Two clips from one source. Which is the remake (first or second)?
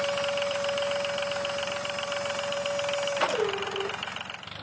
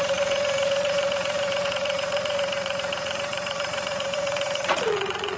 second